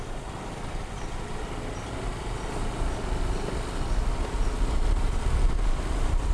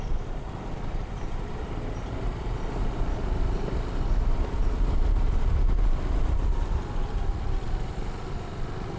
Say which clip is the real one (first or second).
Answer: first